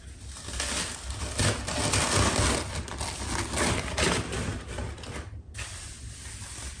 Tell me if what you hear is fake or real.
real